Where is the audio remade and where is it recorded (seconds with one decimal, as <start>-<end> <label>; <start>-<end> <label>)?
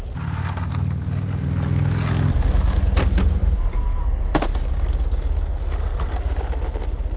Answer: 0.0-7.2 recorded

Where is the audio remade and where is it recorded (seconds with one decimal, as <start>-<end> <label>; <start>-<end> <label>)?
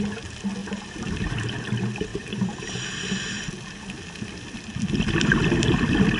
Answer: 0.0-0.6 recorded; 0.6-1.6 remade; 1.6-2.1 recorded; 2.1-2.7 remade; 2.7-6.2 recorded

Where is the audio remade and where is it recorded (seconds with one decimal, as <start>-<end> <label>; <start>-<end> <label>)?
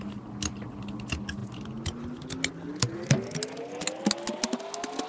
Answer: 0.0-5.1 recorded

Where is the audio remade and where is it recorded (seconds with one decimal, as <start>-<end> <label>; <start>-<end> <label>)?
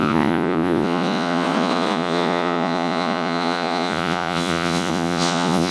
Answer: 0.0-5.7 remade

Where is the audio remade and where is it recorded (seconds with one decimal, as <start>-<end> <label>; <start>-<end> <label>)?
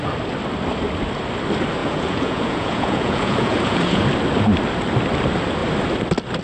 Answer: 0.0-1.8 recorded; 1.8-4.0 remade; 4.0-6.4 recorded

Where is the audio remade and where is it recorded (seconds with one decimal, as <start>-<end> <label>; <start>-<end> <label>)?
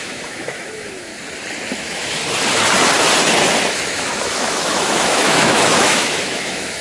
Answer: 0.0-1.1 remade; 1.1-1.8 recorded; 1.8-2.2 remade; 2.2-3.7 recorded; 3.7-6.8 remade